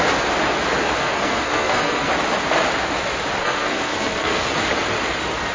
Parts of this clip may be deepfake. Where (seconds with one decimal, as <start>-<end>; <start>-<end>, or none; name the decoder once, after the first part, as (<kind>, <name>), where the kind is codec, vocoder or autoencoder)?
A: 1.0-2.1 (codec, SNAC); 3.4-4.4